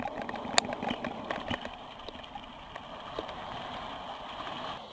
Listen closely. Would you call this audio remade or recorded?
recorded